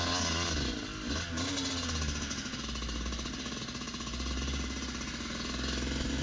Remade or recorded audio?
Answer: recorded